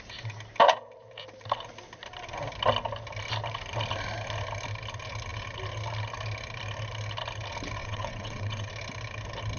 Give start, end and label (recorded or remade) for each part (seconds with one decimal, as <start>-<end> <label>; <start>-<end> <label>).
0.0-7.8 recorded; 7.8-8.7 remade; 8.7-9.6 recorded